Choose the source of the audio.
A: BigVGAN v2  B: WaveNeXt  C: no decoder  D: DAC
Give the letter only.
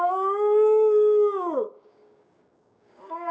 D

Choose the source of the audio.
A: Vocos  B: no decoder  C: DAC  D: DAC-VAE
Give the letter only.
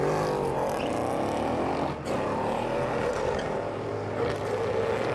B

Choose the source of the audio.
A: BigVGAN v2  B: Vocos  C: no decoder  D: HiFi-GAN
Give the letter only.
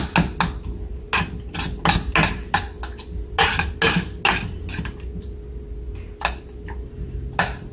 C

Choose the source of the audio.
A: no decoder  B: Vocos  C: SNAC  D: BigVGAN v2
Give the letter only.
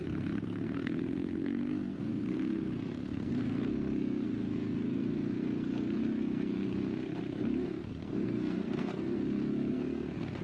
C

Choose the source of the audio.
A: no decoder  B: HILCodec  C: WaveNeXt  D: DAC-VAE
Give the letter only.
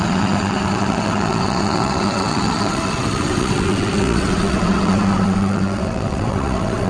C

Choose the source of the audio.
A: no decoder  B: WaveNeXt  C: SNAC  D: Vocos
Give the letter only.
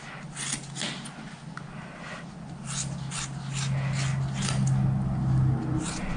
A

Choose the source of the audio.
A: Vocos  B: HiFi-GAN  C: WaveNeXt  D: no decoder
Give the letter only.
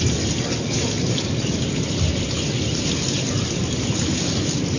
D